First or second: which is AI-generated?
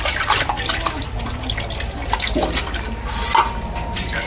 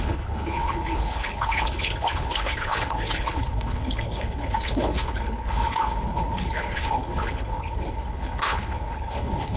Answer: second